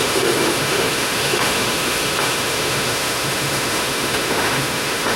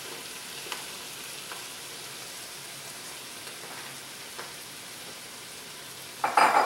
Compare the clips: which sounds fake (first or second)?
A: first